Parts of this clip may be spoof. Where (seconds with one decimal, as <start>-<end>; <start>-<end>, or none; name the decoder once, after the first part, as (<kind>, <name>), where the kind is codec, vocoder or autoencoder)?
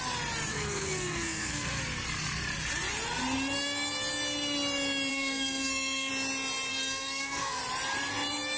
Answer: 0.5-1.8 (codec, SNAC); 5.1-6.1; 6.7-7.6